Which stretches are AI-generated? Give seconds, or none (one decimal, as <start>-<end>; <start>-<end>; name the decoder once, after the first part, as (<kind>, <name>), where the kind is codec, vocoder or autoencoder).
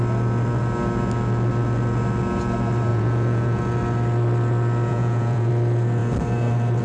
2.9-3.6 (vocoder, Vocos); 4.9-5.5